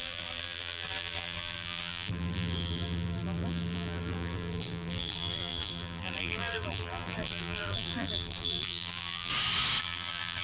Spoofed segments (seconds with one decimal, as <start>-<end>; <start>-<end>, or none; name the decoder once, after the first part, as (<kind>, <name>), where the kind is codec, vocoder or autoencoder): 0.0-9.3 (vocoder, BigVGAN v2); 9.8-10.4